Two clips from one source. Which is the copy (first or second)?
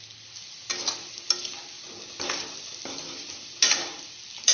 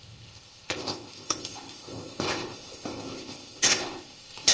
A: second